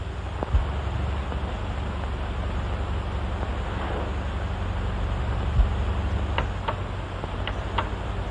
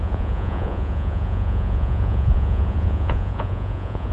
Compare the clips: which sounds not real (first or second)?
second